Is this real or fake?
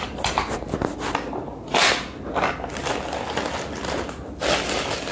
real